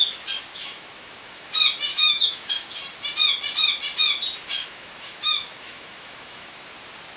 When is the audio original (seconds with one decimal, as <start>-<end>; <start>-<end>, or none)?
0.0-0.5; 1.5-1.9; 2.7-4.6; 6.7-7.2